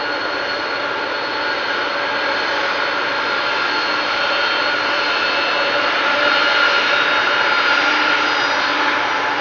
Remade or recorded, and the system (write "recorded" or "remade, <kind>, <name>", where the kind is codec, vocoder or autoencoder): recorded